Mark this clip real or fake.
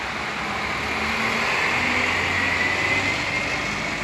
real